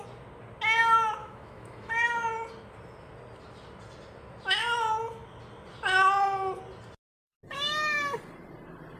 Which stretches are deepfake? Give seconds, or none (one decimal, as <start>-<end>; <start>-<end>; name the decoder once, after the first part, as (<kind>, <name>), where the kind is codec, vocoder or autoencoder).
1.2-1.9 (autoencoder, DAC-VAE)